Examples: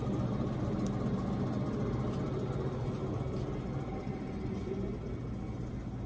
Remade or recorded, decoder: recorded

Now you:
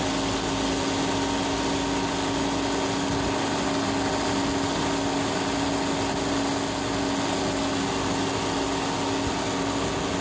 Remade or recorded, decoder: recorded